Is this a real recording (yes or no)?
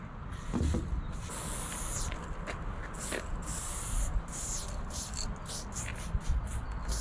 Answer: yes